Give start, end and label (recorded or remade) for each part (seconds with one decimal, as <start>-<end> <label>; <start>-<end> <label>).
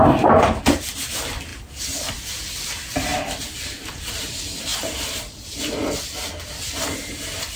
0.0-3.1 recorded; 3.1-3.9 remade; 3.9-7.6 recorded